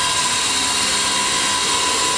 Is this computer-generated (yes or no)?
no